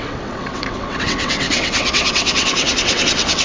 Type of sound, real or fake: fake